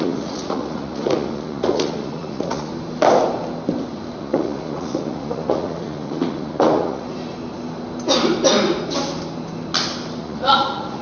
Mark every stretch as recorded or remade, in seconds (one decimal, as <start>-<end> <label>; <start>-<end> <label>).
0.0-2.7 remade; 2.7-4.2 recorded; 4.2-7.1 remade; 7.1-10.2 recorded; 10.2-11.0 remade